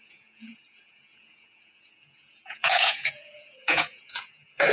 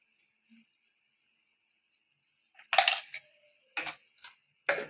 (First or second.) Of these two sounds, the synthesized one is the first